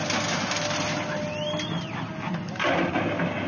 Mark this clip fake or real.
real